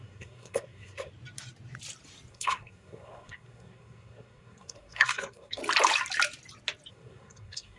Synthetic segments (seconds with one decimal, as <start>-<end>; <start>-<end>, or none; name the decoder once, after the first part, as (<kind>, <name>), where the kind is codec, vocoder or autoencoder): 0.0-1.1 (codec, SNAC); 2.3-5.6; 6.9-7.8